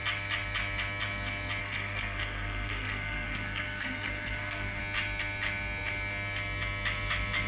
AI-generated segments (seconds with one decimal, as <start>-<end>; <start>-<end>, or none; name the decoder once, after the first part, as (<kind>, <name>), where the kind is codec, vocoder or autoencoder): 1.6-4.8 (codec, SNAC)